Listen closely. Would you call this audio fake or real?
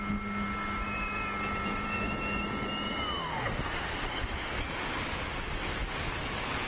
real